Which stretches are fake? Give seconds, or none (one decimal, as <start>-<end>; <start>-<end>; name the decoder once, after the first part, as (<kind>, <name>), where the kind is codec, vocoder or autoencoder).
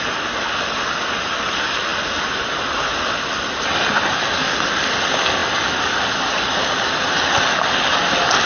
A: none